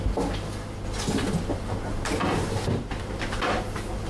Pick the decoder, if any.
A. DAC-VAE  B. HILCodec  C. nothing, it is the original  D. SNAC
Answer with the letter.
C